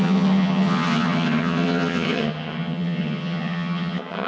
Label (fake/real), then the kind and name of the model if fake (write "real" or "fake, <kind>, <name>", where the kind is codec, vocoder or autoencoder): fake, vocoder, HiFi-GAN